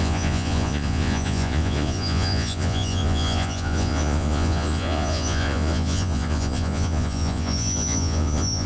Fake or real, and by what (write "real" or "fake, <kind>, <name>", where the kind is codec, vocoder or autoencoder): fake, vocoder, Vocos